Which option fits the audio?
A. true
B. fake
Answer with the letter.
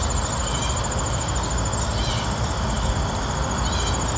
A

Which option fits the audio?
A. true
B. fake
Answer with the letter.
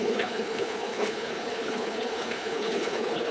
B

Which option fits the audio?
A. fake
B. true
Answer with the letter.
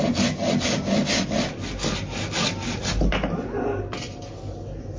B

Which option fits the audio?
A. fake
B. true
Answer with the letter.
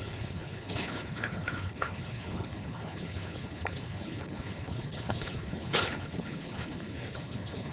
A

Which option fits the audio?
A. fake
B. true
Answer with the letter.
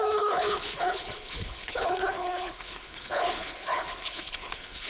A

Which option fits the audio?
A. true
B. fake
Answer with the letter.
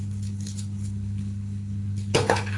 B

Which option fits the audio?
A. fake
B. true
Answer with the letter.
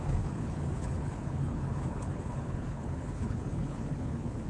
A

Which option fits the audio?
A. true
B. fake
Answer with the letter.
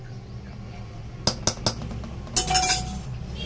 A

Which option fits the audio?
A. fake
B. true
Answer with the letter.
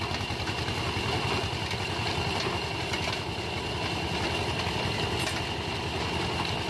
B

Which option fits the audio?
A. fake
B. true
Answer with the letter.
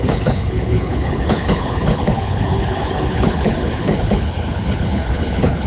A